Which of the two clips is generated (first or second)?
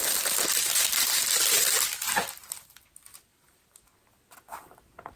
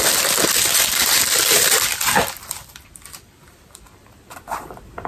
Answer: second